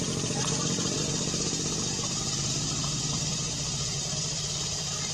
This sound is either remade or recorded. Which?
remade